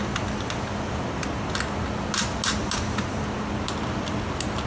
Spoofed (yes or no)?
no